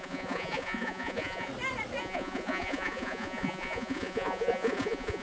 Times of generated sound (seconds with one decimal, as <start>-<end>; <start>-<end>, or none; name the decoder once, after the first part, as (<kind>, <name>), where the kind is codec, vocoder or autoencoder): 0.0-1.5 (vocoder, Vocos); 2.0-5.2